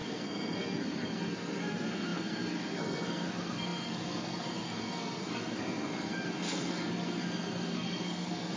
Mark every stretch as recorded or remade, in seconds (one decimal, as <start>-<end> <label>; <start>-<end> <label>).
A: 0.0-8.6 remade